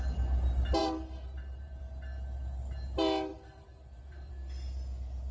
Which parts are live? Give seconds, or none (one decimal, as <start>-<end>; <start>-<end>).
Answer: 0.0-0.8; 1.8-3.3; 4.3-5.3